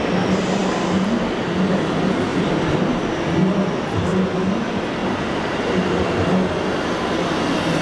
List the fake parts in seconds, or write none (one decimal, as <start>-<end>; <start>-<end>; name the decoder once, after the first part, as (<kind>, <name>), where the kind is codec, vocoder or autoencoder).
2.3-3.0 (vocoder, BigVGAN v2)